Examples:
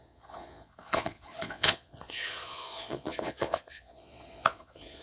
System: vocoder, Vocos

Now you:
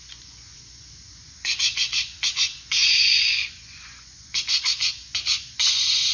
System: vocoder, Vocos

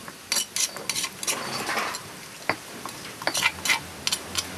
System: none